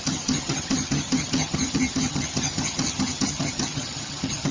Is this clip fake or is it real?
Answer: fake